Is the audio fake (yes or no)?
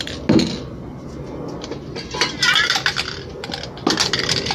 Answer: no